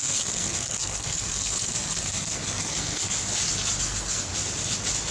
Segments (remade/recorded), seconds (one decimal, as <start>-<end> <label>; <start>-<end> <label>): 0.0-3.3 remade; 3.3-3.8 recorded; 3.8-4.3 remade; 4.3-5.1 recorded